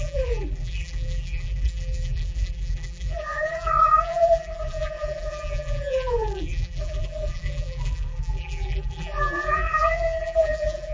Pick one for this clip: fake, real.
fake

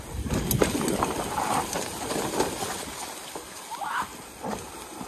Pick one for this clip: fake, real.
real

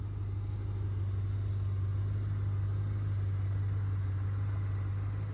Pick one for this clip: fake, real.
real